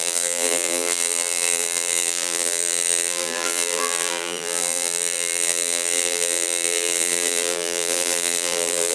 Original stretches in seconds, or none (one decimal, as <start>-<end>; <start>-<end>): none